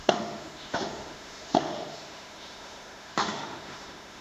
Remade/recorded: remade